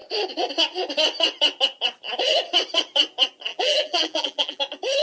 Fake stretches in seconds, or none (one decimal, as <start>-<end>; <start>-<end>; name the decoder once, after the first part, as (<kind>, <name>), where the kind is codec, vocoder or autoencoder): 3.5-4.6 (vocoder, BigVGAN v2)